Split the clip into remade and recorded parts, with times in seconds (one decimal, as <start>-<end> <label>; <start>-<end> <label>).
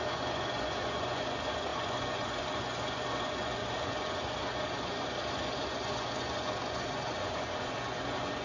0.0-8.4 remade